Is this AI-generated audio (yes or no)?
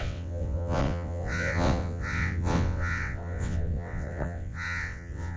yes